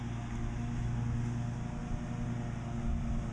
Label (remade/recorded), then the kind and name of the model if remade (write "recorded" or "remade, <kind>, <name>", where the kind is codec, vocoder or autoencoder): recorded